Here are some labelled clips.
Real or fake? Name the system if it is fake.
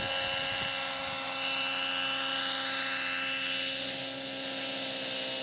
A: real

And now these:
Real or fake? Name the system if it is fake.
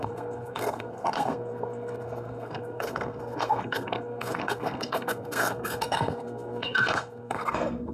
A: fake, codec, SNAC